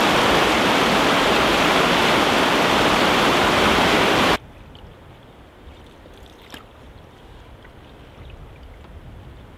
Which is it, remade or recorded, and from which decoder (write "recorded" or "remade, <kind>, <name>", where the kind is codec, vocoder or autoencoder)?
recorded